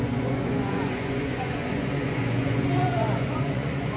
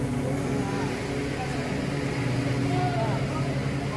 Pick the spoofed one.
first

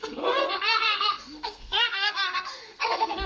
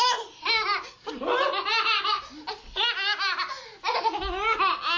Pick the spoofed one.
first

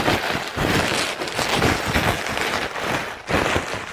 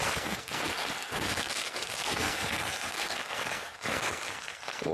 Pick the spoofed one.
second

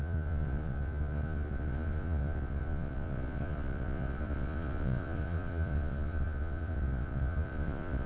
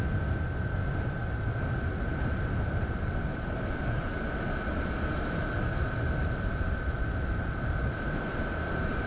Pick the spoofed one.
first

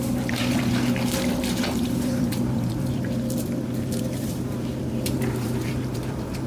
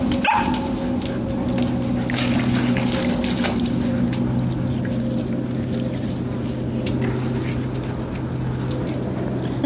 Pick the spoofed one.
first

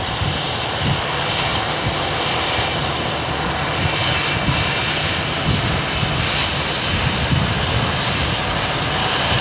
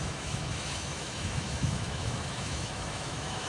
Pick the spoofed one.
second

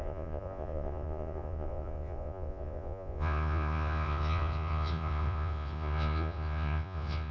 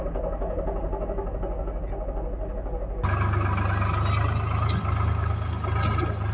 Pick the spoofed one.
first